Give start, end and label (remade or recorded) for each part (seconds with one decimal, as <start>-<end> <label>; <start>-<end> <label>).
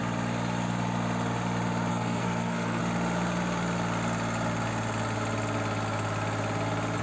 0.0-1.9 recorded; 1.9-2.8 remade; 2.8-7.0 recorded